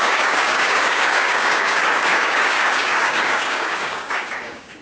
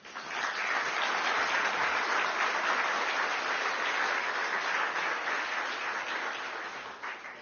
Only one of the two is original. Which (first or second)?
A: second